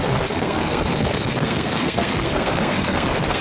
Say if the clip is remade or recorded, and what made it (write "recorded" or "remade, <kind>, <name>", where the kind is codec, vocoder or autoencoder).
remade, codec, SNAC